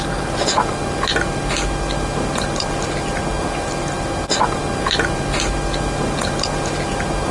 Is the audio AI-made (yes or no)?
no